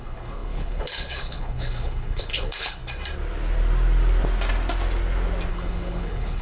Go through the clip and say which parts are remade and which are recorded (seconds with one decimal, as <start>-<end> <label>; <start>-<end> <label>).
0.0-2.8 remade; 2.8-5.5 recorded; 5.5-6.4 remade